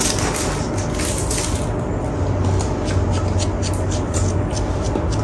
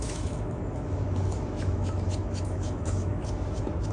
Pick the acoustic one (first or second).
first